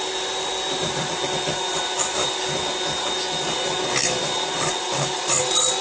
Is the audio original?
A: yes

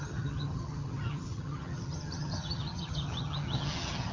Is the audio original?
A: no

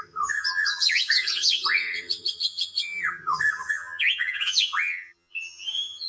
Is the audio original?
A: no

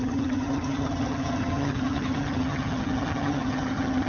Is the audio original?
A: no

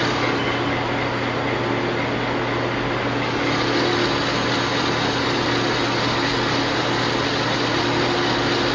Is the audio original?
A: yes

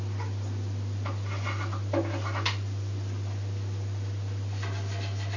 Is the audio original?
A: yes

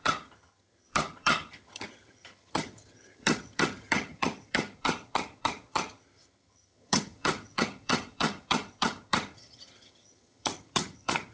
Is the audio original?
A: no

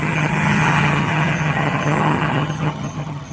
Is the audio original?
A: no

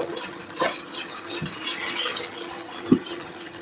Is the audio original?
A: no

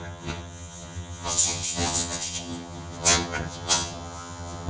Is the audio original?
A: no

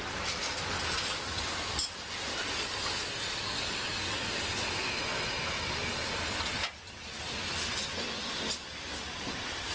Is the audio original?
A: yes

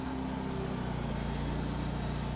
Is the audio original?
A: yes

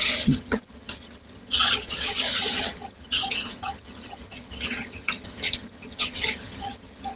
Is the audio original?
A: no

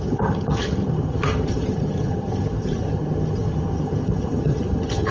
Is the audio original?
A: no